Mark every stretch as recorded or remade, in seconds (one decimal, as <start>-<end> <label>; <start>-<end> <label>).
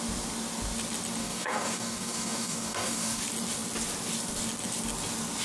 0.0-1.2 recorded; 1.2-3.2 remade; 3.2-5.4 recorded